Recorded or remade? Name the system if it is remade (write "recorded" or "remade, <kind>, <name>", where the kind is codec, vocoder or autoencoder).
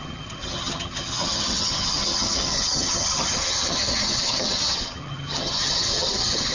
remade, vocoder, HiFi-GAN